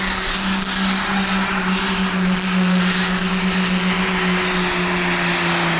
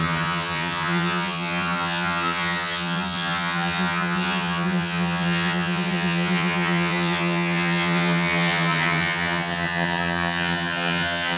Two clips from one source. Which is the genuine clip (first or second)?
first